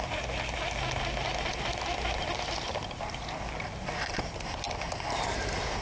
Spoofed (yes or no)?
no